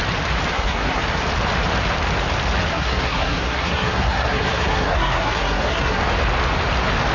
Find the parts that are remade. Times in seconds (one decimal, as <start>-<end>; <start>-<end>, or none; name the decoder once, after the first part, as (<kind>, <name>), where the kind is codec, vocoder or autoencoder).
0.5-1.0 (codec, SNAC); 2.7-6.0